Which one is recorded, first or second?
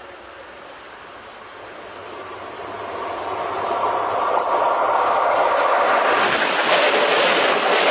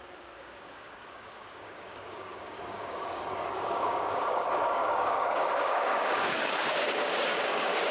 first